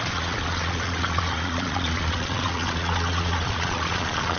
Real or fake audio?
fake